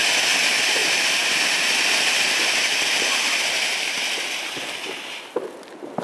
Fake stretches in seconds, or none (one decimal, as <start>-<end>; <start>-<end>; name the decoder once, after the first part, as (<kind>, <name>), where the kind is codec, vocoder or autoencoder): 0.8-4.4 (vocoder, BigVGAN v2)